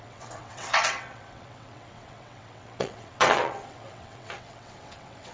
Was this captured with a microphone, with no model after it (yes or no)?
no